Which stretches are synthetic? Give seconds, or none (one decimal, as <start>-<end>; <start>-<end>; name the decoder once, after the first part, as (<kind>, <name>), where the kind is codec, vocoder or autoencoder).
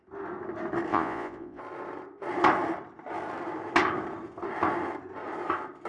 0.9-1.6 (vocoder, Vocos)